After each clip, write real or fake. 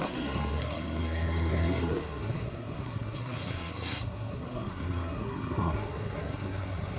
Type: fake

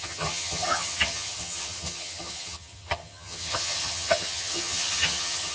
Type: fake